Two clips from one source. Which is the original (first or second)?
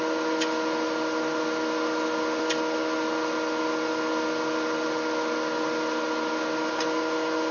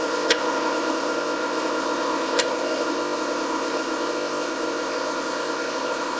first